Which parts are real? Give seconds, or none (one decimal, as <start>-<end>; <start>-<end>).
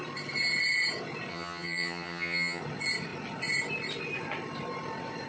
0.0-1.3; 2.6-5.3